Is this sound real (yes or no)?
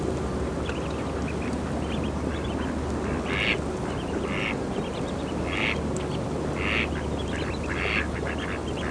yes